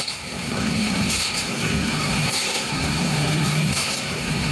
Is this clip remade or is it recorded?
remade